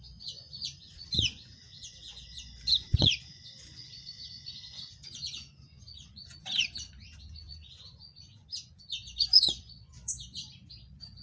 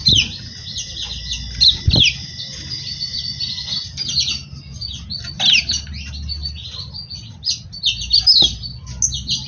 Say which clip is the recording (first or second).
second